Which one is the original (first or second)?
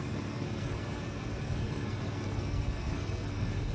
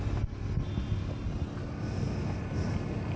second